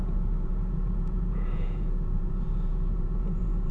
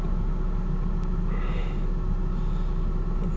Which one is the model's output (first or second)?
first